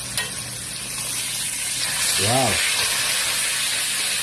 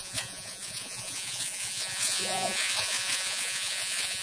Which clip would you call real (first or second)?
first